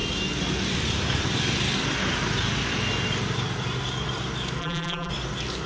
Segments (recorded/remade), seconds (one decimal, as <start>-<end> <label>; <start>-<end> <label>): 0.0-4.6 recorded; 4.6-5.1 remade; 5.1-5.7 recorded